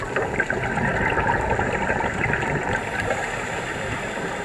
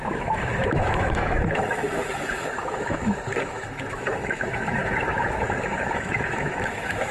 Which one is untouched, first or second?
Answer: first